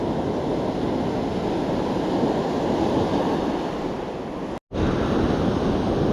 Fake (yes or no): no